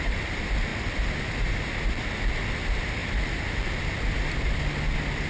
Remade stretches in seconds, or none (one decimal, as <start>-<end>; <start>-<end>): none